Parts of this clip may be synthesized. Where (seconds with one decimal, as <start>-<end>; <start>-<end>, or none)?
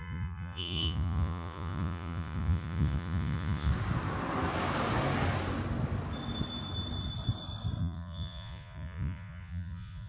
0.0-3.7; 7.8-10.1